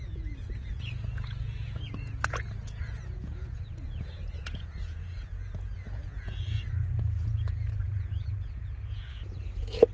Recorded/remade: remade